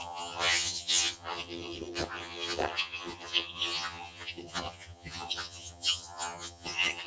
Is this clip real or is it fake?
fake